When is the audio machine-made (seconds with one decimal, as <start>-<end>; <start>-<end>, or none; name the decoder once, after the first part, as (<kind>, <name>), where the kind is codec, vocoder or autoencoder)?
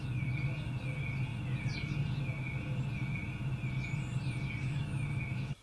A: 4.6-5.6 (autoencoder, DAC-VAE)